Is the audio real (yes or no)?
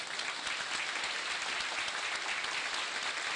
yes